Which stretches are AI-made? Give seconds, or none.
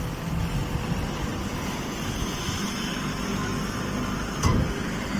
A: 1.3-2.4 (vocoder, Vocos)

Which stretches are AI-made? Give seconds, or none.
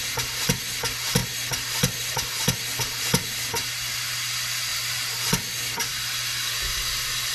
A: 4.7-5.3 (vocoder, BigVGAN v2)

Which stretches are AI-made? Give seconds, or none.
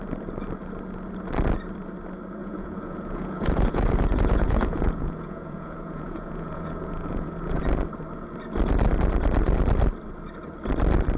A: 2.4-7.6 (vocoder, Vocos)